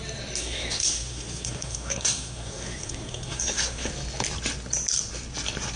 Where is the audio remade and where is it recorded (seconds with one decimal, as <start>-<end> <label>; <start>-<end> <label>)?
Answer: 0.0-0.4 recorded; 0.4-3.9 remade; 3.9-5.8 recorded